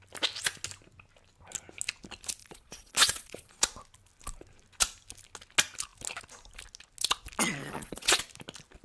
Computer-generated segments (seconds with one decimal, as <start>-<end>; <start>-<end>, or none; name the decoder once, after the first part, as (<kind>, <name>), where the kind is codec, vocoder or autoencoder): 2.4-3.5 (vocoder, Vocos); 7.6-8.2